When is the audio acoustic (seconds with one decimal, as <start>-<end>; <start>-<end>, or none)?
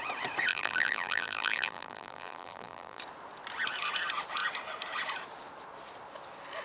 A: 0.0-0.5; 3.0-6.6